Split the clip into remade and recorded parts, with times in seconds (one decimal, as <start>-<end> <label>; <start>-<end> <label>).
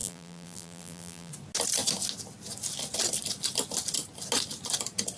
0.0-1.3 remade; 1.3-5.2 recorded